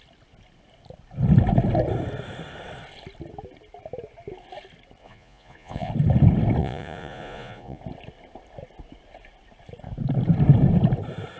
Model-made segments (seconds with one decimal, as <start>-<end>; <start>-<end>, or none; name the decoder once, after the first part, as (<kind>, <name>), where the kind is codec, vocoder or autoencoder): 5.0-5.9 (vocoder, Vocos); 6.6-7.8